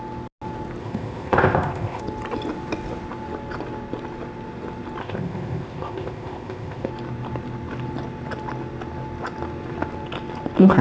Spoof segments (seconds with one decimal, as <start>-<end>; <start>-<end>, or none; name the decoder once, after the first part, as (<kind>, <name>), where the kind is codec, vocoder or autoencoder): 0.8-2.0 (codec, ZipCodec); 5.0-6.9